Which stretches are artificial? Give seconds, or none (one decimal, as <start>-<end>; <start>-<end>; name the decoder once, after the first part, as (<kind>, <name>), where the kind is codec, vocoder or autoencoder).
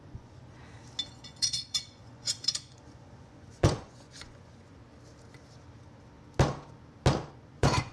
0.0-0.6 (vocoder, Vocos); 1.1-4.8; 7.3-7.9